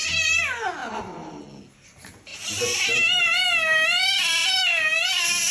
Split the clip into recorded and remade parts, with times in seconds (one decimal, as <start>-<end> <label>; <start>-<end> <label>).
0.0-0.8 recorded; 0.8-1.4 remade; 1.4-2.3 recorded; 2.3-2.9 remade; 2.9-5.5 recorded